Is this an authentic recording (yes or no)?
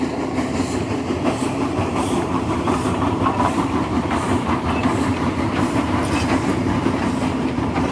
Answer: no